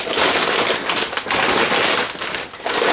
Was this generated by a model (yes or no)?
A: no